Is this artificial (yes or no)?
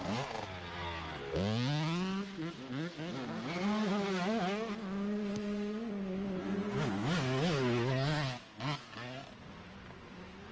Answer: no